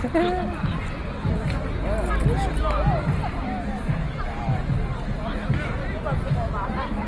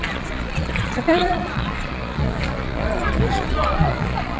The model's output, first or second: second